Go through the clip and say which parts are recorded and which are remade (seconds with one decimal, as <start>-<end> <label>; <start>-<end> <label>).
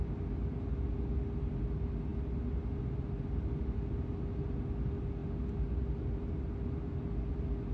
0.0-7.7 recorded